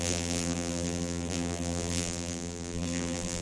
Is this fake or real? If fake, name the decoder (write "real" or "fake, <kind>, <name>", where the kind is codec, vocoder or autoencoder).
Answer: fake, vocoder, BigVGAN v2